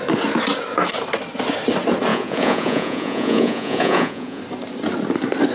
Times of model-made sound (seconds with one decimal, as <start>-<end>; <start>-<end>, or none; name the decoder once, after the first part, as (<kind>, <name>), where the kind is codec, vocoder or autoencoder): 2.1-4.4 (vocoder, Vocos)